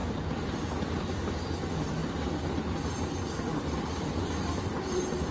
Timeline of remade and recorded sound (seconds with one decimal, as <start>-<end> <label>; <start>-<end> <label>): 0.0-5.3 recorded